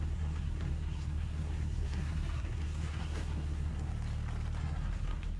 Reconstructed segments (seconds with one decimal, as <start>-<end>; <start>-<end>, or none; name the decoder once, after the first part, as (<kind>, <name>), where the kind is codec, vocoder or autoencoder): 0.0-3.9 (codec, SNAC); 4.6-5.4